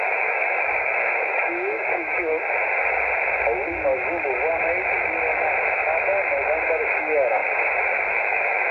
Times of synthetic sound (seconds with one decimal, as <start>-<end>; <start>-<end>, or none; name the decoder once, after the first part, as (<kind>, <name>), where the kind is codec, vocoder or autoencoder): 0.0-2.3 (autoencoder, DAC-VAE); 7.0-7.4; 8.0-8.7